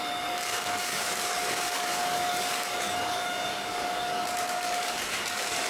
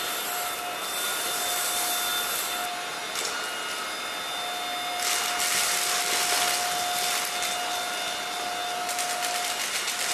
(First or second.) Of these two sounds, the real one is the second